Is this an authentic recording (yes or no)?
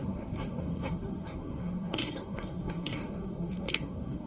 no